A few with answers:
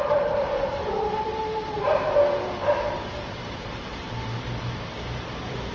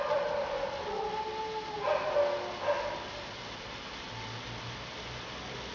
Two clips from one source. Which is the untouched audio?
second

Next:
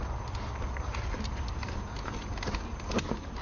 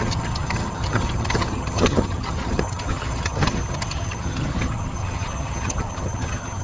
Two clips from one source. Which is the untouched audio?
first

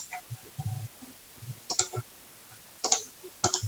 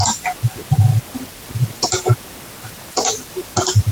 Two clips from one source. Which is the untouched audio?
first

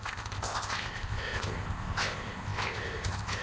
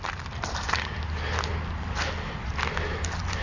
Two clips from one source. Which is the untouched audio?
second